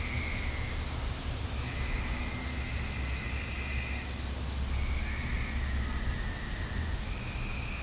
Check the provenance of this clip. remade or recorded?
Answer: recorded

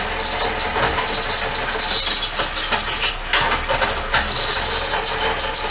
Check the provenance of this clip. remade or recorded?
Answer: recorded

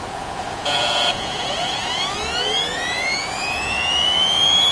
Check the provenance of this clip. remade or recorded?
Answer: remade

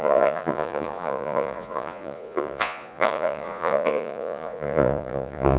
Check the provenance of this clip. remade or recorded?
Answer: remade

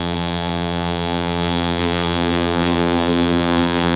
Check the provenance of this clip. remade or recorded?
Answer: remade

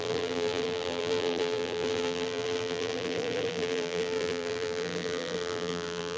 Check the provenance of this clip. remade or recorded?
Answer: remade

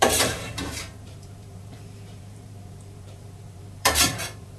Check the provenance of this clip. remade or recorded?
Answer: remade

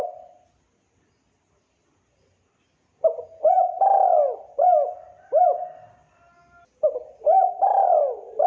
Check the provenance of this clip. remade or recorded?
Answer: recorded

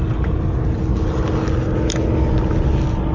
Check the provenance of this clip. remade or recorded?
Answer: recorded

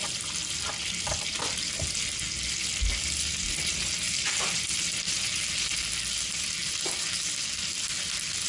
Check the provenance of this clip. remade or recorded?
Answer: recorded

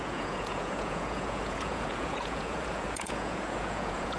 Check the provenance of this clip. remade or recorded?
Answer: remade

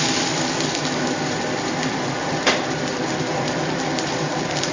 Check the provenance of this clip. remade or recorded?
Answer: remade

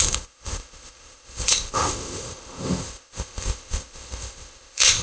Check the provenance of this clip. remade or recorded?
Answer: remade